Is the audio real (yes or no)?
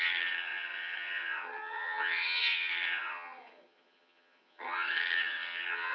no